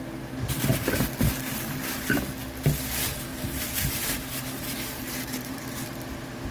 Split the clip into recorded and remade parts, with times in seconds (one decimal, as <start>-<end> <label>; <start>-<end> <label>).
0.0-3.3 recorded; 3.3-5.9 remade; 5.9-6.5 recorded